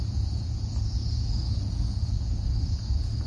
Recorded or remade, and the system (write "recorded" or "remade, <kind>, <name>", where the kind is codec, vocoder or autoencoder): remade, vocoder, Vocos